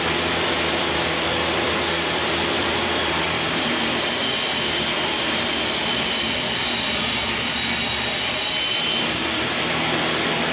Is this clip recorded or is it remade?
remade